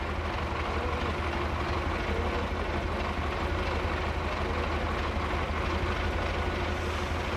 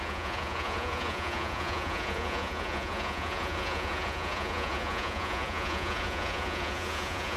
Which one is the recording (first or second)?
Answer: first